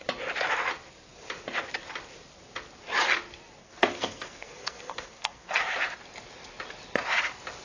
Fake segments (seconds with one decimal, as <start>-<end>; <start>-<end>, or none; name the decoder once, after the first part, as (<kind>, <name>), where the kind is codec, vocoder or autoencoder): 3.6-5.6 (codec, SNAC)